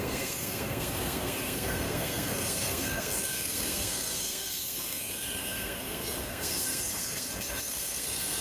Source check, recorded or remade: remade